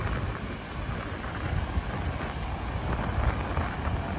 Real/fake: real